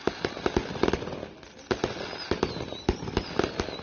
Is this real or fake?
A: fake